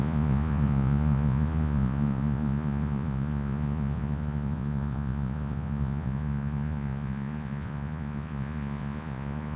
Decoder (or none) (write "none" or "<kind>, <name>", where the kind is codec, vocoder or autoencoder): vocoder, Vocos